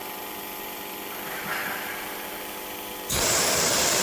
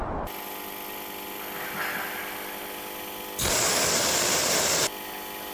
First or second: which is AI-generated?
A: first